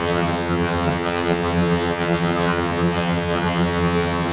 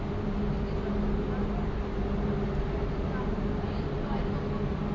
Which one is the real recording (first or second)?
second